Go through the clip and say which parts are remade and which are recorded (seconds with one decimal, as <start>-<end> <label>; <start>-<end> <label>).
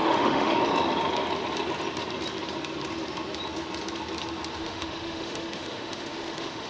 0.0-0.6 remade; 0.6-4.6 recorded; 4.6-6.7 remade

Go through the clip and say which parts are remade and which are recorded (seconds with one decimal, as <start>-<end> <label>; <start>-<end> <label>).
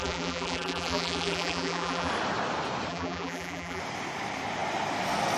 0.0-2.1 remade; 2.1-2.9 recorded; 2.9-3.8 remade; 3.8-5.4 recorded